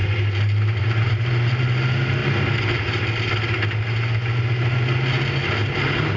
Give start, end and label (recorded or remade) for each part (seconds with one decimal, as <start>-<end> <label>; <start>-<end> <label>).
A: 0.0-6.2 recorded